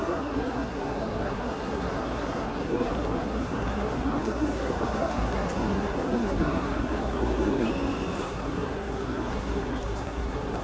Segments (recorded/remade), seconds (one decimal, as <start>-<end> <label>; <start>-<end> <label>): 0.0-7.7 remade; 7.7-8.2 recorded; 8.2-10.6 remade

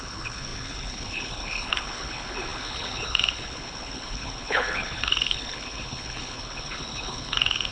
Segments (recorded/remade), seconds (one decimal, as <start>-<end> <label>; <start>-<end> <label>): 0.0-7.7 remade